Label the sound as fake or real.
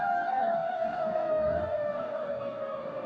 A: fake